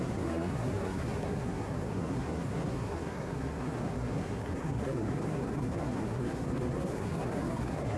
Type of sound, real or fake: fake